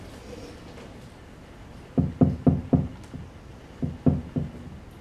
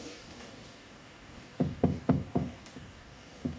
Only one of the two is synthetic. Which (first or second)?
second